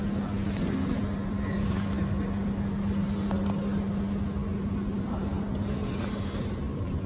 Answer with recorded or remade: recorded